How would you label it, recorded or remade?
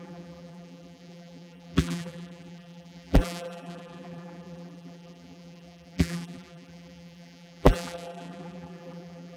remade